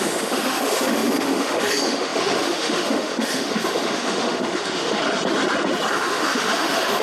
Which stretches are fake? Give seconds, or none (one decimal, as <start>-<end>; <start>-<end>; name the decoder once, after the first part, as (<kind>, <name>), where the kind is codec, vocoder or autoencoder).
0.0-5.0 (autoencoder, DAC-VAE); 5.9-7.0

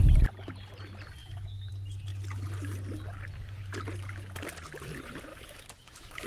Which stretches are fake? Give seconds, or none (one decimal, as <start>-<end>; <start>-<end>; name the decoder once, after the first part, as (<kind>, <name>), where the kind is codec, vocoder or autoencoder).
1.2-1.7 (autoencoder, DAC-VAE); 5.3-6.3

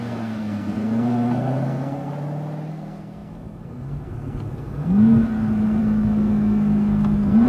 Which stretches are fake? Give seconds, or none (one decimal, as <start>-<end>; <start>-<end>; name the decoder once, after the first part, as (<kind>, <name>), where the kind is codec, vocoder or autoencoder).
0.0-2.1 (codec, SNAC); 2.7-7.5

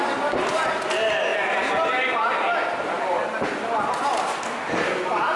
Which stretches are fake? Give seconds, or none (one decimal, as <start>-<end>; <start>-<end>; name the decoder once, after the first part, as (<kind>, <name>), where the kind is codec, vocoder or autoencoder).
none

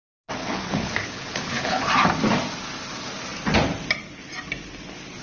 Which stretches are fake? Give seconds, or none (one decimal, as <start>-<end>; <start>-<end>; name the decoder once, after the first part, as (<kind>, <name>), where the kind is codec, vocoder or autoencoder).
0.4-1.9 (codec, HILCodec)

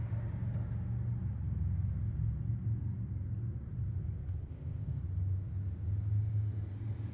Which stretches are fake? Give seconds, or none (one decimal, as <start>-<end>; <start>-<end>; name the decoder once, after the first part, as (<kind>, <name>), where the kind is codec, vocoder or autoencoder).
4.5-5.0 (codec, ZipCodec)